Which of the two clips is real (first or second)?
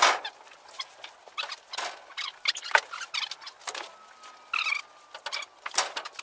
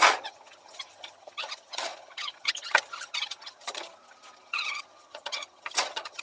first